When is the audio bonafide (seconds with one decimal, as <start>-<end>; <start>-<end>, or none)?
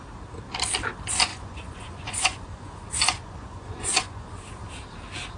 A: 0.0-1.3; 4.5-5.4